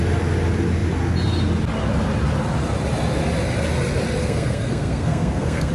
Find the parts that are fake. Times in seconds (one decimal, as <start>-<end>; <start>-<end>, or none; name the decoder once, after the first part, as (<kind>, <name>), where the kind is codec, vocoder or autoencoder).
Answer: 4.2-5.7 (codec, SNAC)